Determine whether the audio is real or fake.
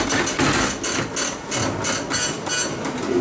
real